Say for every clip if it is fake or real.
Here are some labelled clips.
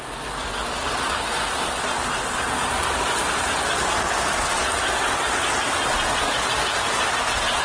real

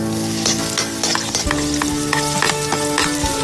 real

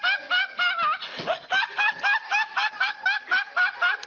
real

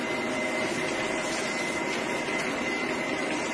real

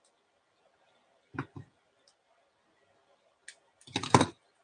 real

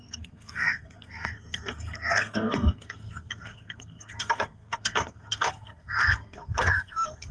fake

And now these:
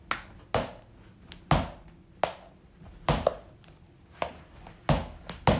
real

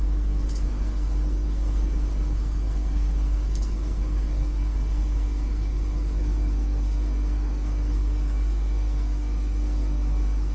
fake